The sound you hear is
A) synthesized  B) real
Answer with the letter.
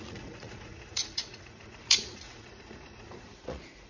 A